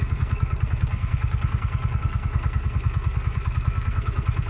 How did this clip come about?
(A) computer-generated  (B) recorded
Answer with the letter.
A